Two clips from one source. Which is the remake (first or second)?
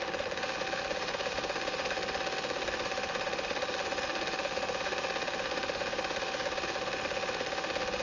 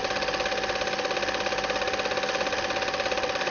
first